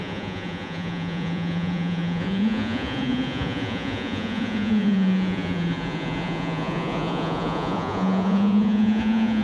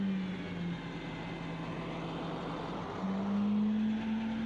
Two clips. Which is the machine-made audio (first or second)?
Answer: first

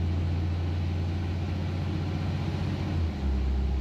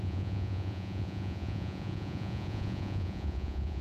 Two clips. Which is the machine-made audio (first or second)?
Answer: second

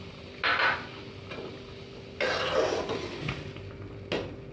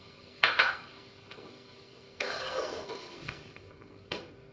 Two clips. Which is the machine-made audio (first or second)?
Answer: second